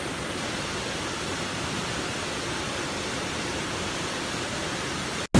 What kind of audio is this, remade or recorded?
recorded